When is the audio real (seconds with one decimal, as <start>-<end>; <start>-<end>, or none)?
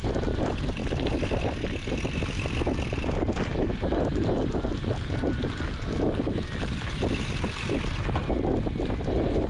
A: 0.8-2.0